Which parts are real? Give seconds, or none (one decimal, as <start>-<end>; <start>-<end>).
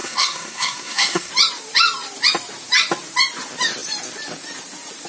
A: 1.3-5.1